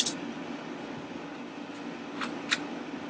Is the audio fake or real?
real